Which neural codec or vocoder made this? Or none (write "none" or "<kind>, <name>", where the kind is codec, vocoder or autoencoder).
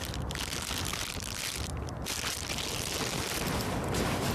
none